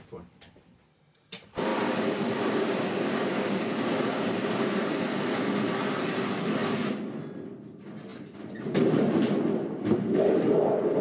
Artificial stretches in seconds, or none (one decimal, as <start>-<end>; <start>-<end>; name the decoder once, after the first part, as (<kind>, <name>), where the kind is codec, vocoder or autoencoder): 0.0-11.0 (vocoder, BigVGAN v2)